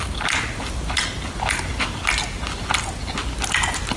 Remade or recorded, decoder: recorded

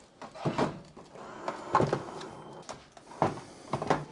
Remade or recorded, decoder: recorded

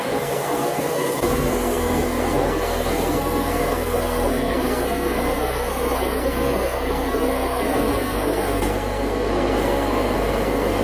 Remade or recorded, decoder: remade, codec, SNAC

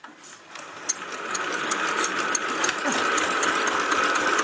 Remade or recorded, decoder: recorded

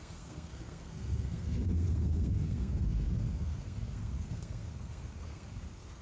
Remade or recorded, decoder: remade, codec, SNAC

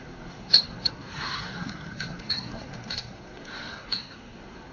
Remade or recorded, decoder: remade, codec, SNAC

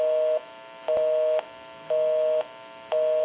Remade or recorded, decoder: recorded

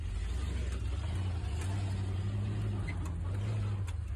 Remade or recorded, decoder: recorded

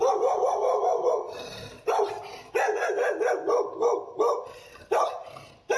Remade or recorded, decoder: recorded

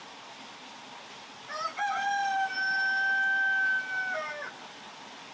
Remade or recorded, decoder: recorded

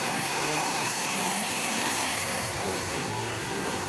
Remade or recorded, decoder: remade, codec, SNAC